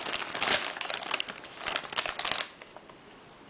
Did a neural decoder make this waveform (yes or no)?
no